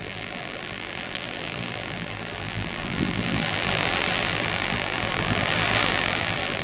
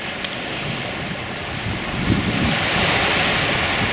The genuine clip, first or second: second